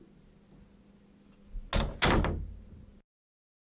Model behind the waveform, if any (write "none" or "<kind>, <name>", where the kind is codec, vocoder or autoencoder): none